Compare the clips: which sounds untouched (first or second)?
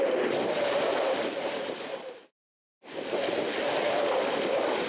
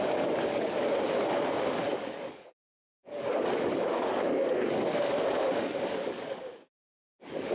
first